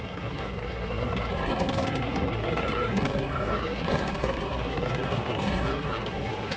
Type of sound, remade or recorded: remade